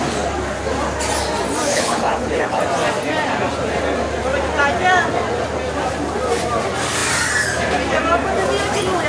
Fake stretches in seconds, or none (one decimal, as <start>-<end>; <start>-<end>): 1.7-2.6